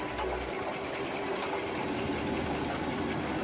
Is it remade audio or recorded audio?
recorded